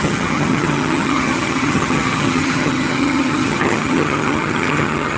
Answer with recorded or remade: remade